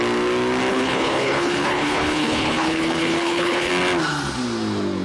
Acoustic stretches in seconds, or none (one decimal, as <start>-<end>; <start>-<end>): 0.0-0.7; 3.7-5.0